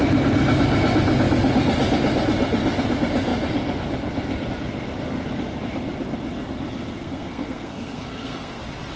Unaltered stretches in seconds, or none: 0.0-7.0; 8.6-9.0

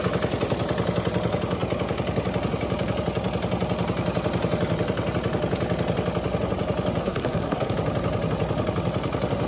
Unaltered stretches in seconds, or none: 0.0-7.0; 7.7-9.5

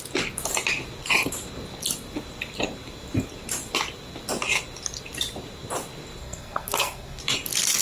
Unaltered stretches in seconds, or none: 0.0-6.2; 7.2-7.8

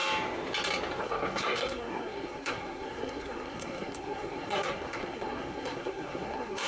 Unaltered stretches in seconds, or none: 0.0-1.0

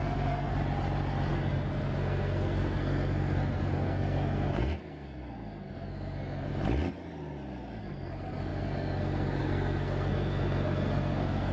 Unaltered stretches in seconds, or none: 0.5-1.3; 6.5-7.8

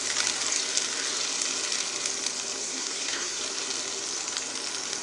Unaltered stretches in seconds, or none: 0.0-2.6; 3.4-5.0